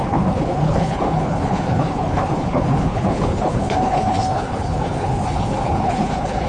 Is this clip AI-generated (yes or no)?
yes